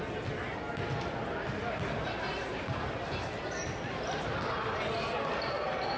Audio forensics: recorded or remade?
recorded